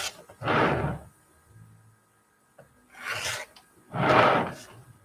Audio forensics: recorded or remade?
recorded